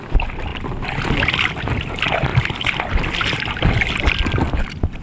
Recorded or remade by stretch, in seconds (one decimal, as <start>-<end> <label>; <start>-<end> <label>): 0.0-5.0 recorded